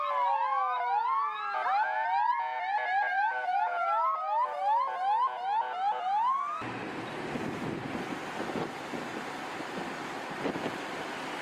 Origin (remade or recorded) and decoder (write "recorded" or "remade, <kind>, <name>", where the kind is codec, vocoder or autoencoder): recorded